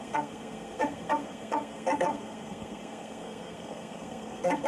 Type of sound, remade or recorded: remade